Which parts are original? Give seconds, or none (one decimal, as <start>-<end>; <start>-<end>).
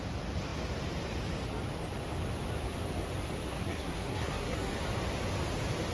0.0-3.5; 4.7-5.9